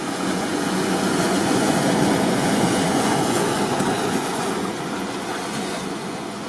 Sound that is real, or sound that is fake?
fake